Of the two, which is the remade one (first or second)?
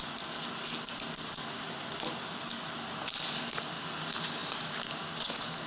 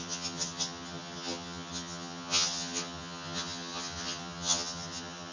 second